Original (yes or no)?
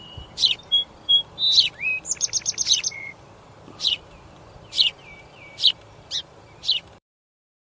no